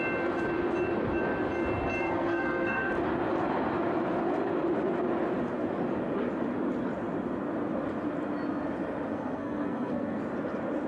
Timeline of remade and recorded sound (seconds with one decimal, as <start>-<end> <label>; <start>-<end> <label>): 0.0-2.0 recorded; 2.0-2.9 remade; 2.9-9.1 recorded; 9.1-10.2 remade; 10.2-10.9 recorded